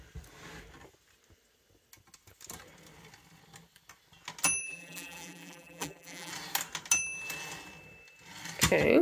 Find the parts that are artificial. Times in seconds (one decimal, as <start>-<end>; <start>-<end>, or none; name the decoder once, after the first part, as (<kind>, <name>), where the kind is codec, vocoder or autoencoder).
4.6-6.3 (vocoder, BigVGAN v2)